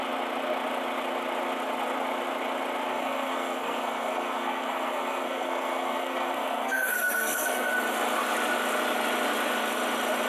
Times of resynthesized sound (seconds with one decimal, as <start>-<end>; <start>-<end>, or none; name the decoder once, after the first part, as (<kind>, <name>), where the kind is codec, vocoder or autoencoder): 2.9-7.7 (codec, SNAC)

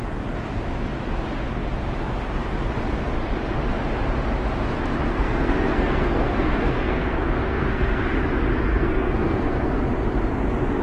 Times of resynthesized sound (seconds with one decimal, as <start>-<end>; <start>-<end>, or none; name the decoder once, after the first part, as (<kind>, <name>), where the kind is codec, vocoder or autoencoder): 5.1-8.0 (codec, SNAC); 8.7-9.8

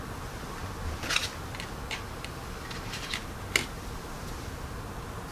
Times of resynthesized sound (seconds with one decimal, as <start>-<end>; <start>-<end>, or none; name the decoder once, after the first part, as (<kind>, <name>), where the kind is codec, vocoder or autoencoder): none

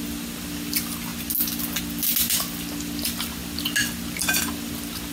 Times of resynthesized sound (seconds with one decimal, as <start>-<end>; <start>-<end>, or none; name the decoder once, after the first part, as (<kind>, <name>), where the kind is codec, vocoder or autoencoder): none